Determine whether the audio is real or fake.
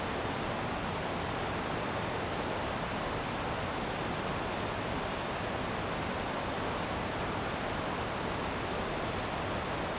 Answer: real